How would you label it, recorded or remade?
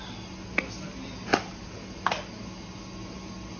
recorded